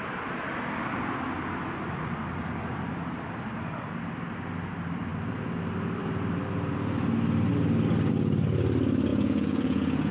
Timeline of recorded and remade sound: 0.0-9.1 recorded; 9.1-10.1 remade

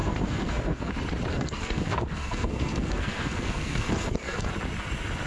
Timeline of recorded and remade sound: 0.0-0.9 remade; 0.9-1.3 recorded; 1.3-4.5 remade; 4.5-5.3 recorded

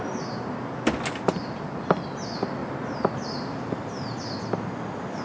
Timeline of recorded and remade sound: 0.0-2.6 recorded; 2.6-4.2 remade; 4.2-5.2 recorded

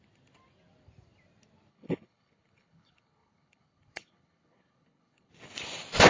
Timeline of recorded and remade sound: 0.0-1.7 recorded; 1.7-5.3 remade; 5.3-6.1 recorded

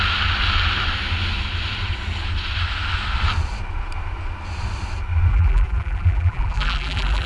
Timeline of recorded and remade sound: 0.0-5.3 recorded; 5.3-7.3 remade

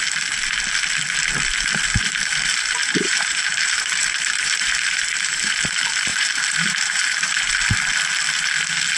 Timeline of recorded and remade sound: 0.0-2.8 recorded; 2.8-5.5 remade; 5.5-6.1 recorded; 6.1-7.5 remade; 7.5-9.0 recorded

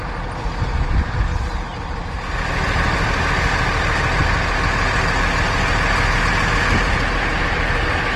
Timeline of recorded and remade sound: 0.0-8.2 recorded

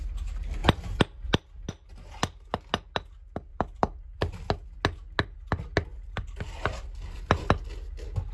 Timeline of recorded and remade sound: 0.0-3.5 recorded; 3.5-4.5 remade; 4.5-5.9 recorded; 5.9-7.4 remade; 7.4-8.3 recorded